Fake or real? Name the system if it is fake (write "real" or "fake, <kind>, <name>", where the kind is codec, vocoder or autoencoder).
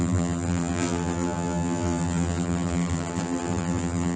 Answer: fake, vocoder, BigVGAN v2